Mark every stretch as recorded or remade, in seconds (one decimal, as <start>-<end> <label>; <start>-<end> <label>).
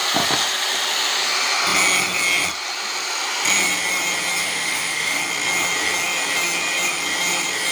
0.0-4.4 recorded; 4.4-5.2 remade; 5.2-7.7 recorded